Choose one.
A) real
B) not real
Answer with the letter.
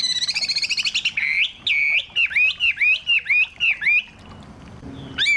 A